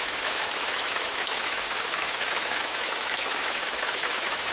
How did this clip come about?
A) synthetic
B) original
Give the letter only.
A